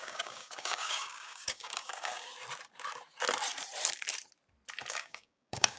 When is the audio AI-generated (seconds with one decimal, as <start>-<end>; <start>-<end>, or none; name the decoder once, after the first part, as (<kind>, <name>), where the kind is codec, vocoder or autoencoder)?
0.0-2.3 (codec, DAC); 4.9-5.8